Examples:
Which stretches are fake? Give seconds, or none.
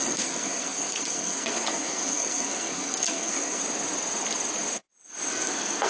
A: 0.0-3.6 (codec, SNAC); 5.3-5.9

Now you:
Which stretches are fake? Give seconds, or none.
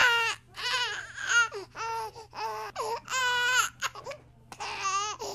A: none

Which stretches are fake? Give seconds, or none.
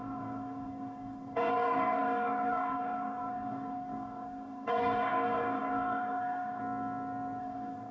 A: 0.0-6.6 (codec, DAC); 7.4-7.9